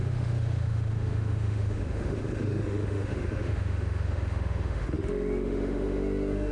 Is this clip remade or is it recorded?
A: remade